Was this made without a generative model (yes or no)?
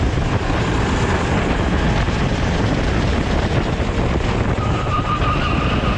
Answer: yes